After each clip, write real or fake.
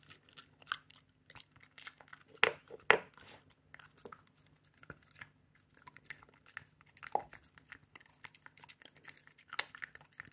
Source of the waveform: real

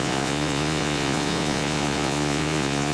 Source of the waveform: fake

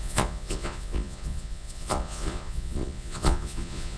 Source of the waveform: fake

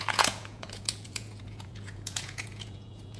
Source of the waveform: fake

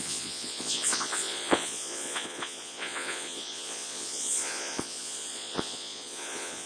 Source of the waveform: fake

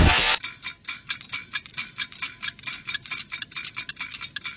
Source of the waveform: real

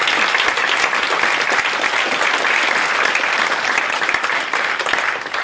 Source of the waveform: real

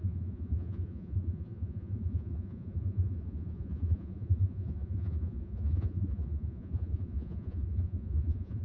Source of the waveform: fake